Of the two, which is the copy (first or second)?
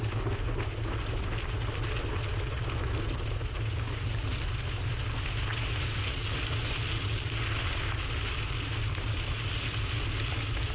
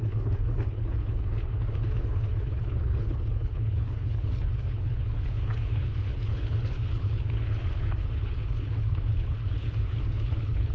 second